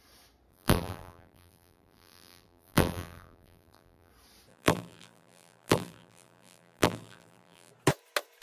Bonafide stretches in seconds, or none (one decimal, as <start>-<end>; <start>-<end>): 0.0-0.5; 4.1-4.5; 7.7-8.4